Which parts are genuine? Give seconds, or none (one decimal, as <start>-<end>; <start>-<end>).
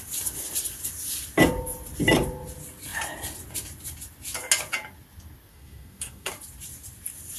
0.0-5.5; 6.3-7.4